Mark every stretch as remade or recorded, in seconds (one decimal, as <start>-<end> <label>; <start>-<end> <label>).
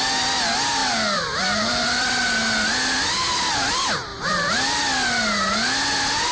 0.0-0.8 recorded; 0.8-2.1 remade; 2.1-4.1 recorded; 4.1-4.8 remade; 4.8-6.3 recorded